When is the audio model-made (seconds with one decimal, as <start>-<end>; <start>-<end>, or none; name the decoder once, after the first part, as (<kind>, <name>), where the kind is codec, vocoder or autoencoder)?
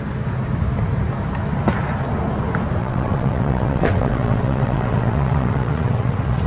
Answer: 2.8-6.5 (vocoder, WaveNeXt)